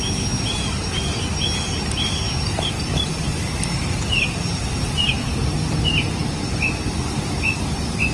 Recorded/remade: recorded